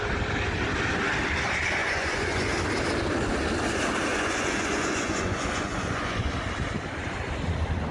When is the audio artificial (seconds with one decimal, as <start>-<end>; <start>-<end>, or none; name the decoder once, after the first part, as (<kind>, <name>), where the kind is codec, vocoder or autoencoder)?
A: 1.8-2.5 (vocoder, Vocos); 4.1-6.3